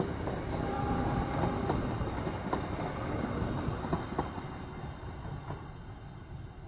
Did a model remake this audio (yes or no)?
no